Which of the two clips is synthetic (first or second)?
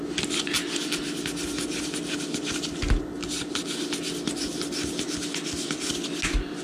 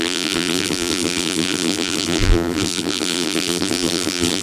second